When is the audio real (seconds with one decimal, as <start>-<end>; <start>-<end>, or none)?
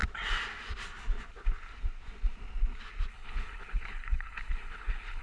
0.0-3.1